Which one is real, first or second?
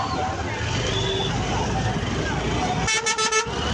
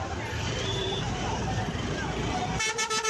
first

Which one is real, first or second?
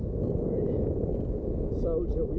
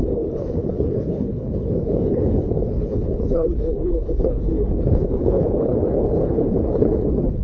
first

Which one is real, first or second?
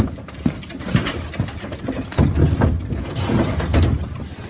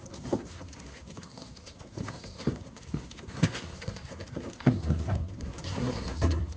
first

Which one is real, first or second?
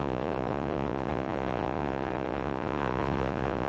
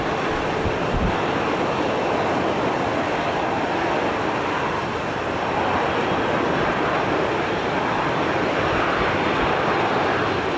second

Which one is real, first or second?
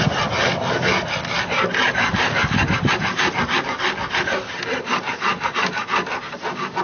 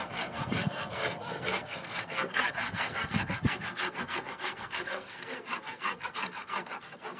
first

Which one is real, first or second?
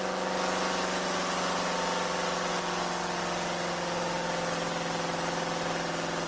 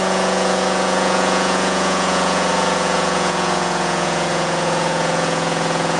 first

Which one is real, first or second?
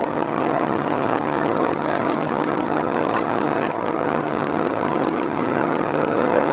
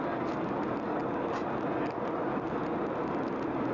second